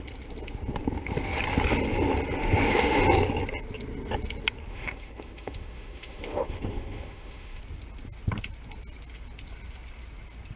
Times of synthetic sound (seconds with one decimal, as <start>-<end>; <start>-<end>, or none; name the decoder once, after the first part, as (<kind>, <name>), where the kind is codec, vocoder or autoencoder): 2.4-3.0 (autoencoder, DAC-VAE); 4.7-7.6